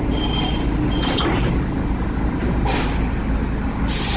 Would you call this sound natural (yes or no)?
yes